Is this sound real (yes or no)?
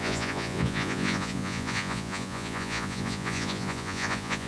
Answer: no